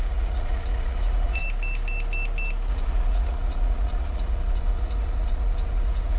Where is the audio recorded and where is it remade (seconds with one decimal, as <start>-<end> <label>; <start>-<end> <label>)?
0.0-1.4 remade; 1.4-2.7 recorded; 2.7-6.2 remade